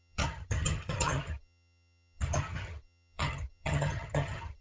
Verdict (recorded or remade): remade